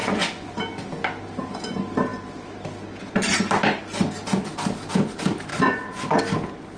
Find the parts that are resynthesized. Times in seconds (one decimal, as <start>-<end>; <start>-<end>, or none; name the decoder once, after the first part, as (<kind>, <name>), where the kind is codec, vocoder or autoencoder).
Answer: 0.0-0.6 (vocoder, Vocos); 5.5-6.2